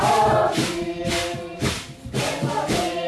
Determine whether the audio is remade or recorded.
recorded